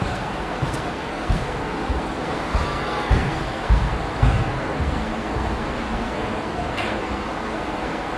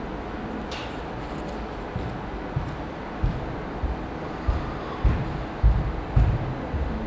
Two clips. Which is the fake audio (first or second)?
first